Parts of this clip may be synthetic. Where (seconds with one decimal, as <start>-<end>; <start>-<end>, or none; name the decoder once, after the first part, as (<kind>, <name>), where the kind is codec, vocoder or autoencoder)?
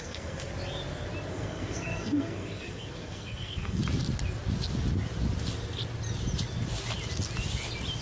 0.0-0.5 (codec, SNAC); 1.3-3.8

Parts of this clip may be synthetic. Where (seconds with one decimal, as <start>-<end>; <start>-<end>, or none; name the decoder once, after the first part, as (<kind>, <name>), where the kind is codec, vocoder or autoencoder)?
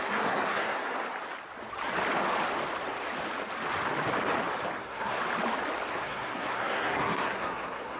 0.0-0.9 (codec, SNAC); 4.8-5.2; 5.9-8.0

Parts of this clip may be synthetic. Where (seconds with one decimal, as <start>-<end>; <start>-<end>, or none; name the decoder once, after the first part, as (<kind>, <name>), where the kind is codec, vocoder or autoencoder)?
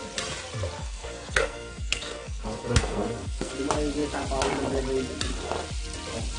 0.8-3.5 (codec, SNAC)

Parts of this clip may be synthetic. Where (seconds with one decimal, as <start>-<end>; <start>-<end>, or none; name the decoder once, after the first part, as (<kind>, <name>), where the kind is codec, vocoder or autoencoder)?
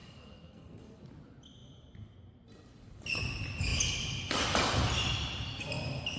0.0-1.0 (codec, SNAC)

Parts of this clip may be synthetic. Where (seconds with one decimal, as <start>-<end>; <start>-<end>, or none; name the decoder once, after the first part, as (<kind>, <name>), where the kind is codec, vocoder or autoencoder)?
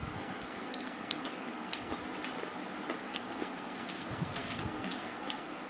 0.0-1.9 (codec, SNAC); 3.0-5.7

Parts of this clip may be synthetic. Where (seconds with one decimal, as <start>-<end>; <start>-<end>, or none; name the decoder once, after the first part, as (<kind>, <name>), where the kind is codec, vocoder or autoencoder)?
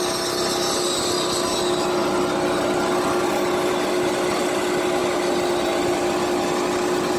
none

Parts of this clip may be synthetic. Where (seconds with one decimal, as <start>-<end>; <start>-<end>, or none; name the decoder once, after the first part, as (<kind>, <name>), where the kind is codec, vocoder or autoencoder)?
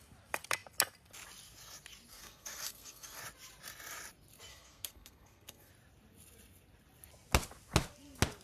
2.1-3.2 (codec, SNAC); 4.5-5.7